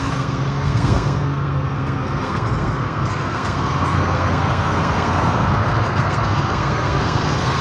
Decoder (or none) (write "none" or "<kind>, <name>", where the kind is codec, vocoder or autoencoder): codec, SNAC